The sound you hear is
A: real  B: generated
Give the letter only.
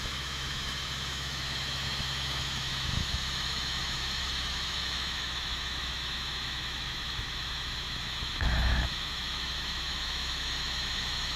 B